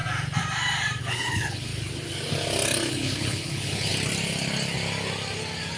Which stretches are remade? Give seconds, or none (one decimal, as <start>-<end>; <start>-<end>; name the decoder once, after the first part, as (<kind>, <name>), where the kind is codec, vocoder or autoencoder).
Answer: 1.0-1.7 (codec, HILCodec); 2.9-3.9